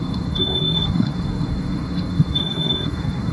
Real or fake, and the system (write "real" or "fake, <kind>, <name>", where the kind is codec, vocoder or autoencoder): fake, codec, SNAC